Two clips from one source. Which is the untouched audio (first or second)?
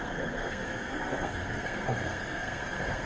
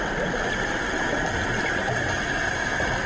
second